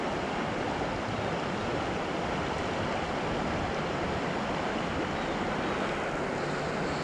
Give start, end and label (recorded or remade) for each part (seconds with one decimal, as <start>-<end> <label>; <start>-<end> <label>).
0.0-7.0 recorded